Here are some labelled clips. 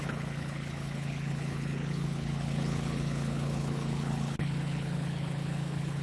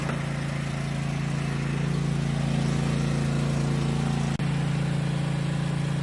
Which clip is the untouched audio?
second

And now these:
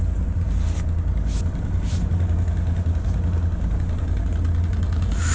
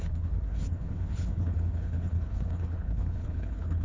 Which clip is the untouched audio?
first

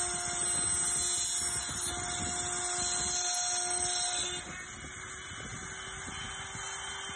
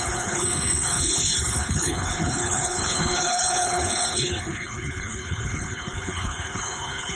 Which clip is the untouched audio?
first